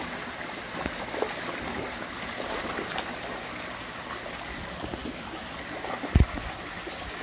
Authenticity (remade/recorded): recorded